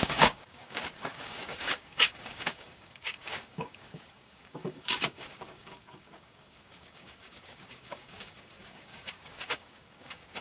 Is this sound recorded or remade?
remade